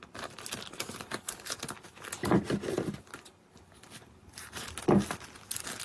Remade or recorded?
recorded